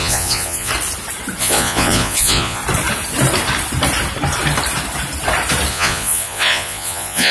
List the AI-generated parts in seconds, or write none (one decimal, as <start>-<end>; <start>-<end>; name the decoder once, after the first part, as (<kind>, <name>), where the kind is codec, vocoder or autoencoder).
0.0-0.7 (vocoder, Vocos); 1.4-2.6; 5.7-7.3